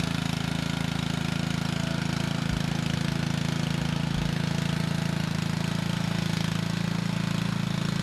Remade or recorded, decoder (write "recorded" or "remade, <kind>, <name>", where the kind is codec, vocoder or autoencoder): recorded